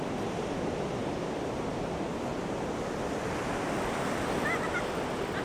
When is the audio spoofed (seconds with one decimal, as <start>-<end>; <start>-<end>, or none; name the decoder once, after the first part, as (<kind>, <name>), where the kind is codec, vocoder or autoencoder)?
none